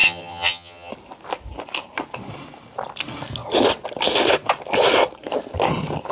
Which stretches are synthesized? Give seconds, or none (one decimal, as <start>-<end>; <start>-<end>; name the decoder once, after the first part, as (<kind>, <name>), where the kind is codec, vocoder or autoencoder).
0.0-0.9 (vocoder, HiFi-GAN)